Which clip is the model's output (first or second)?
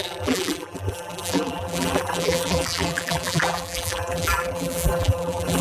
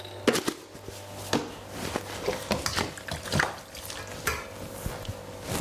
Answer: first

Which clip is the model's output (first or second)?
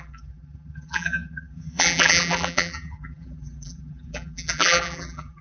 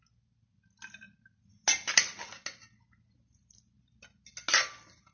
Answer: first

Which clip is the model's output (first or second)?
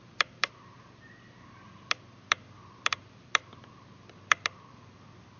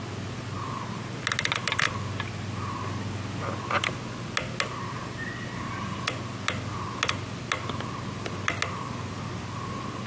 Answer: first